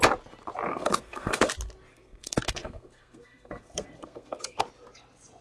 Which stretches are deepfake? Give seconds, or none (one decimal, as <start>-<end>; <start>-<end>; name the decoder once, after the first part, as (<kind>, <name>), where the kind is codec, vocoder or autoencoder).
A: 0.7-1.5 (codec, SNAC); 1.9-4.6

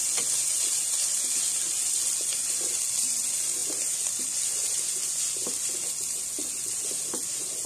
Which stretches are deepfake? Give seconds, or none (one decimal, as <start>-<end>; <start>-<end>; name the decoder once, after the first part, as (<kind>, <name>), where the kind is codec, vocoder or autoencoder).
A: none

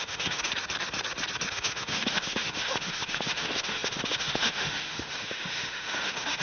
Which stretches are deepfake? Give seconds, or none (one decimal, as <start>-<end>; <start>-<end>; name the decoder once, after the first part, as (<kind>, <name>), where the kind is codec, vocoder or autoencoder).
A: 0.0-0.5 (autoencoder, DAC-VAE); 1.5-6.4

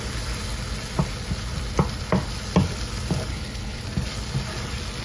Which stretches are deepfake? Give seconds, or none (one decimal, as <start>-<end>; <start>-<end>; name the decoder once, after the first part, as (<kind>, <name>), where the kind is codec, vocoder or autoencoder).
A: 3.3-3.8 (codec, HILCodec)

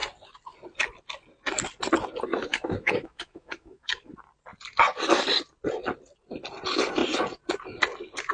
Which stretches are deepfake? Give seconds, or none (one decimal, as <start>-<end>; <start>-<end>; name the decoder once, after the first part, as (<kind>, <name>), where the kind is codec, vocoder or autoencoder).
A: 2.5-4.1 (autoencoder, DAC-VAE)